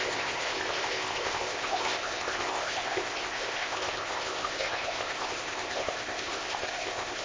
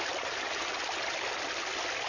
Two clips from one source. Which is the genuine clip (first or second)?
second